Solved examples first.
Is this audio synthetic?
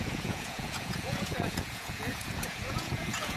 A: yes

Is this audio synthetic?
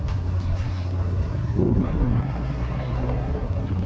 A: yes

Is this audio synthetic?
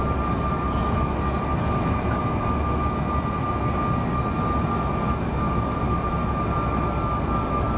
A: no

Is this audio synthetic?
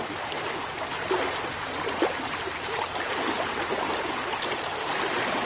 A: no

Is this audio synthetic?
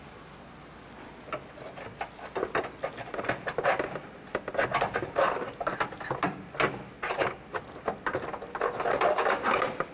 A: no